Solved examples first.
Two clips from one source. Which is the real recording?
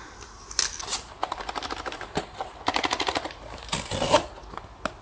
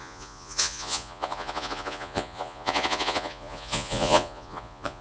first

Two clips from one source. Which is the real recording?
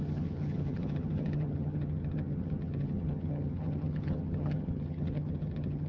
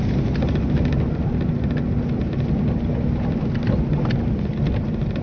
second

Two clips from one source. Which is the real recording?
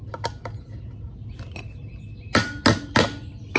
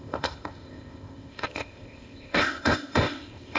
first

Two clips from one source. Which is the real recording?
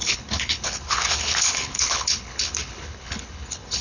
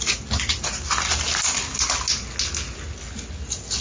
second